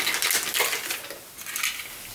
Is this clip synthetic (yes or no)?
no